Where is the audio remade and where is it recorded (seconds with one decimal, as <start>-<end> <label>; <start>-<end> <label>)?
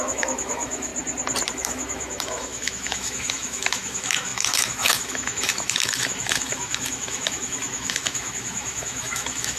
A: 0.0-0.9 remade; 0.9-1.5 recorded; 1.5-9.6 remade